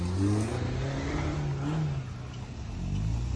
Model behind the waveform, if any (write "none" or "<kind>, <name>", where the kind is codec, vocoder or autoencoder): none